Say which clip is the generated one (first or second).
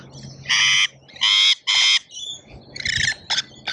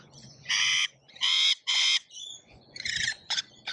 second